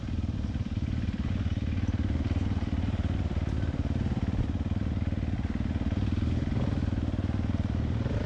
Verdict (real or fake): real